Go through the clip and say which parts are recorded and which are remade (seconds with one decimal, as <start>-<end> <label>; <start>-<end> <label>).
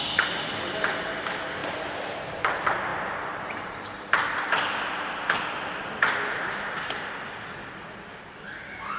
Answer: 0.0-2.9 recorded; 2.9-4.3 remade; 4.3-9.0 recorded